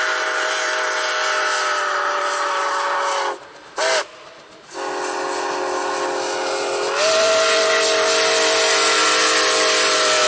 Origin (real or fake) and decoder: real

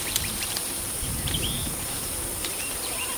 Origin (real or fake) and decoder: fake, vocoder, BigVGAN v2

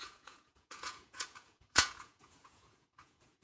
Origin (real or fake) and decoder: fake, vocoder, Vocos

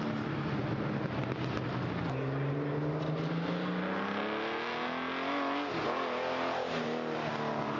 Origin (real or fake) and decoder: real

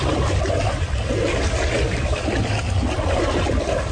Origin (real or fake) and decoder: real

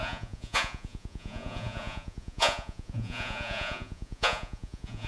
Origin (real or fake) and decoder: fake, vocoder, Vocos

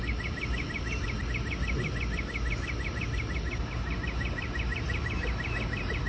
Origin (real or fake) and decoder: real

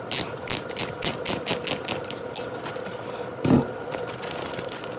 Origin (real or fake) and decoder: real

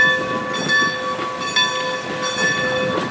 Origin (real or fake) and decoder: real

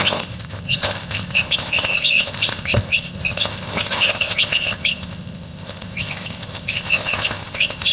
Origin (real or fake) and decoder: fake, codec, ZipCodec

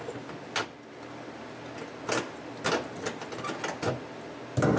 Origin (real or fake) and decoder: real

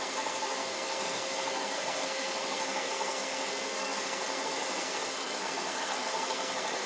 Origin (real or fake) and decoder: fake, codec, SNAC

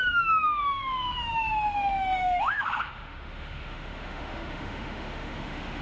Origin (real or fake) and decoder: fake, autoencoder, DAC-VAE